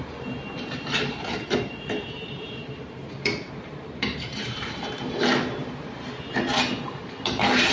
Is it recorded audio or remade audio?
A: remade